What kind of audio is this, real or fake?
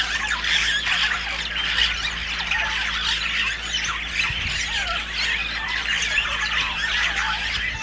real